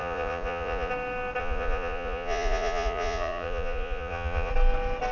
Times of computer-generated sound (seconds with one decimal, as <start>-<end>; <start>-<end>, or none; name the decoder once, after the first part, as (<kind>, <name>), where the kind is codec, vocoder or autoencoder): 0.0-0.9 (vocoder, Vocos); 1.4-4.5